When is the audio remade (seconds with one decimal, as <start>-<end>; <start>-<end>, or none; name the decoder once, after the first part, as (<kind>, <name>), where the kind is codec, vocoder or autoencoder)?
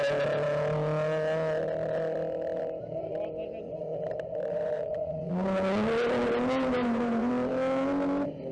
4.4-5.3 (vocoder, Vocos); 6.8-7.3